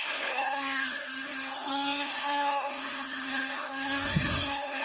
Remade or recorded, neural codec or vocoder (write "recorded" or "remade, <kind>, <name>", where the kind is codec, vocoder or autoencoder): remade, codec, SNAC